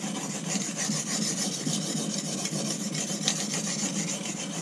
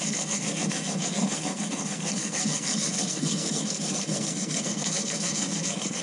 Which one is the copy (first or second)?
second